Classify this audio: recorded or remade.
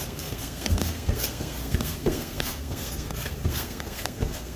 remade